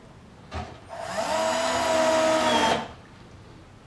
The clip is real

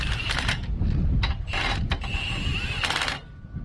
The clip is real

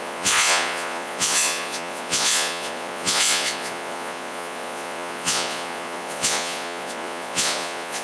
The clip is fake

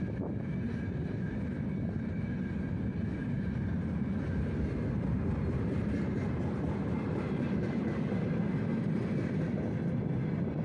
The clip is real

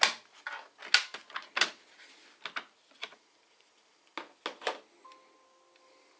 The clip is real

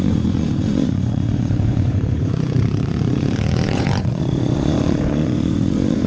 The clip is fake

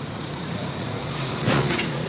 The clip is fake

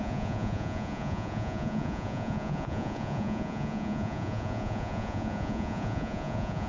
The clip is fake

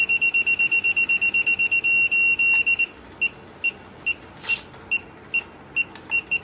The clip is real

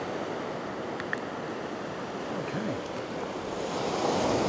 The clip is real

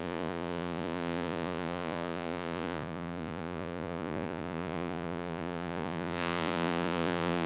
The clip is fake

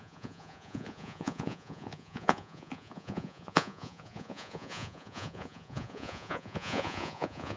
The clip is fake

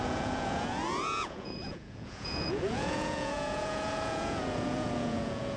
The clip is fake